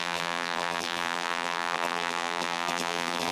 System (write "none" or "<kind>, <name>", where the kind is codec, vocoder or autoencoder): vocoder, BigVGAN v2